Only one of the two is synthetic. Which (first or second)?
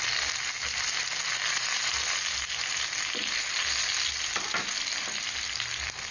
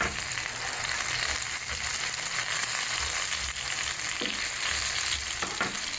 second